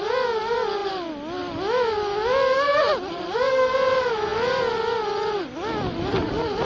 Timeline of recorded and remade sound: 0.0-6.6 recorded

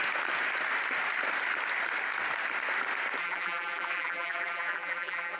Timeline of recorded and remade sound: 0.0-3.2 recorded; 3.2-5.4 remade

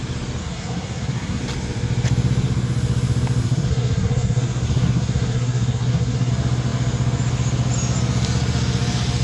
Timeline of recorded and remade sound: 0.0-0.4 recorded; 0.4-1.4 remade; 1.4-3.4 recorded; 3.4-6.3 remade; 6.3-9.2 recorded

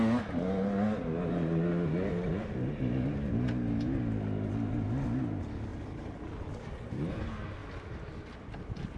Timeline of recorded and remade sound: 0.0-9.0 recorded

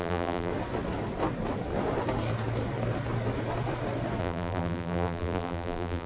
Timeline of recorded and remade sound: 0.0-0.5 remade; 0.5-4.2 recorded; 4.2-6.1 remade

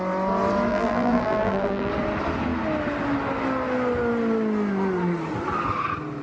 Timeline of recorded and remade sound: 0.0-0.7 recorded; 0.7-1.9 remade; 1.9-6.2 recorded

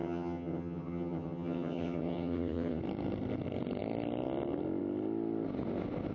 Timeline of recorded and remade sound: 0.0-2.8 remade; 2.8-6.1 recorded

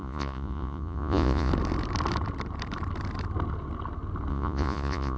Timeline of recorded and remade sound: 0.0-1.5 remade; 1.5-4.3 recorded; 4.3-5.2 remade